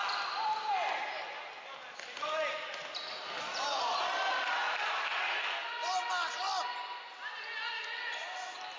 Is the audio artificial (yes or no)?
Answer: no